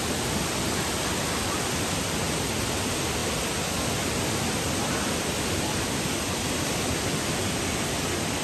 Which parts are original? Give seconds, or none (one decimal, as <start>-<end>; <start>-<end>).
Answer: 0.0-8.4